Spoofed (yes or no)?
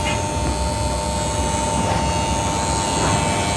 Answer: no